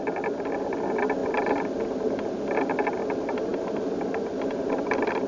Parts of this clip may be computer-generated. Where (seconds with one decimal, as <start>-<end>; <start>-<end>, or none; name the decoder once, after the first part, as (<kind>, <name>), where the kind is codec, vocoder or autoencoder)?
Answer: 1.2-2.6 (vocoder, BigVGAN v2); 3.5-4.0

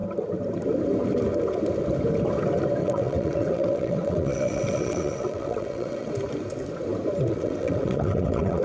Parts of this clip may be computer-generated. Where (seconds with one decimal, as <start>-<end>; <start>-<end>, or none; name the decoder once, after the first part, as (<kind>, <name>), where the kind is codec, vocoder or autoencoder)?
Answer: 2.8-6.1 (vocoder, WaveNeXt); 7.3-8.6

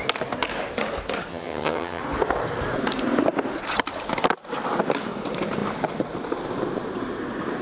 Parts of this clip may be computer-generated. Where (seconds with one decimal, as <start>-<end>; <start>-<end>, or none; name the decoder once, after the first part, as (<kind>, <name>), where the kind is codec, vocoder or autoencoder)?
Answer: 1.3-2.0 (vocoder, HiFi-GAN)

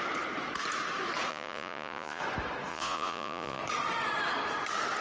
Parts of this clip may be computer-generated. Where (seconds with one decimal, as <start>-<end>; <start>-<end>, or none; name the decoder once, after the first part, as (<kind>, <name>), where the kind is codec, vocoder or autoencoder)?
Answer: 1.3-2.2 (vocoder, Vocos); 2.7-3.6

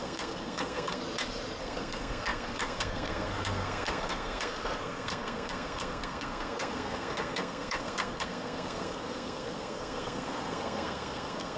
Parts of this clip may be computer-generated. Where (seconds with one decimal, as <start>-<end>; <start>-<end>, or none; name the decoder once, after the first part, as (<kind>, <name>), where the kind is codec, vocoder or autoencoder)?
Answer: 0.0-1.0 (codec, SNAC); 1.6-11.6

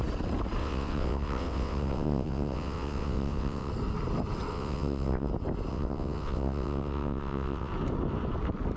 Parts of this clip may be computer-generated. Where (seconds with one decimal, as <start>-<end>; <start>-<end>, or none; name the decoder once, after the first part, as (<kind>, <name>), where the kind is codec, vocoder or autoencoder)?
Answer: 0.6-3.7 (vocoder, WaveNeXt); 4.5-5.3; 5.7-7.7